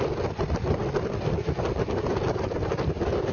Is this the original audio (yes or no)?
yes